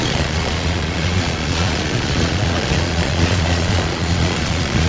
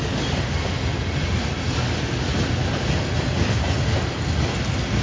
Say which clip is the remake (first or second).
first